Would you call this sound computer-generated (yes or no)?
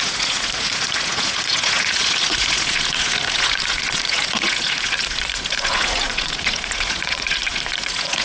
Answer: yes